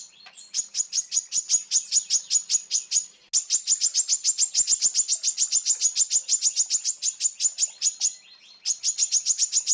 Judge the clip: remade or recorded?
recorded